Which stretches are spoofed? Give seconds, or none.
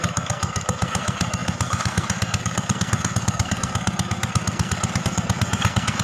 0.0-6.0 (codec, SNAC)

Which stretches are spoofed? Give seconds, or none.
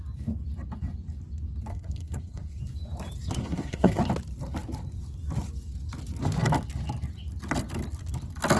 1.7-2.6 (codec, SNAC); 3.4-4.0